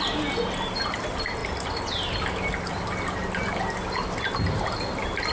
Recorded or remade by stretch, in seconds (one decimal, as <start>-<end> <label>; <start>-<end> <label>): 0.0-5.3 recorded